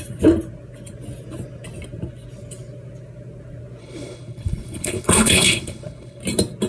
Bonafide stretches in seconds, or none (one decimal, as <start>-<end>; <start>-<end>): 0.0-3.8; 6.2-6.7